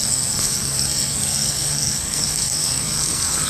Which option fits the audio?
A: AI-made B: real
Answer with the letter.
A